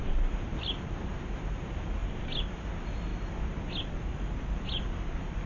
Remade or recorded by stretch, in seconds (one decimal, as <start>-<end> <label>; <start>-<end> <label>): 0.0-2.0 remade; 2.0-2.5 recorded; 2.5-3.1 remade; 3.1-4.9 recorded; 4.9-5.5 remade